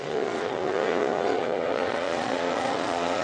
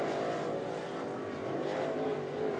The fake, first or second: first